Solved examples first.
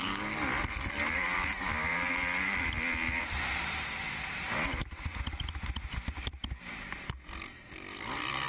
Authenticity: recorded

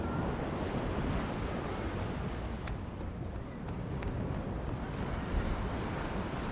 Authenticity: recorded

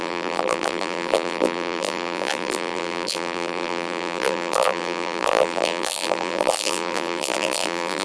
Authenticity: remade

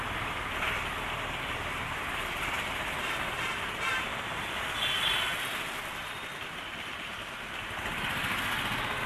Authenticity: recorded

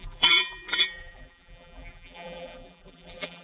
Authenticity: remade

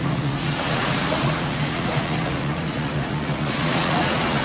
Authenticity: remade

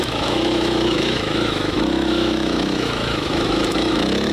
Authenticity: remade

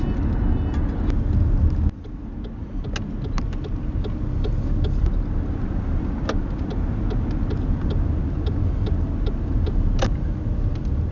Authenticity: recorded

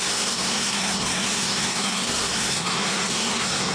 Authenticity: remade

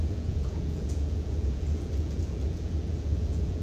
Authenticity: remade